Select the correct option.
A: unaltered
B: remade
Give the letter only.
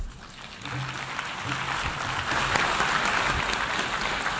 A